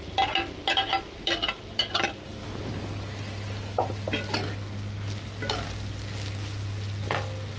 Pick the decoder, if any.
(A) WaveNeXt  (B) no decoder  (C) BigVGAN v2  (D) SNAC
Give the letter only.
B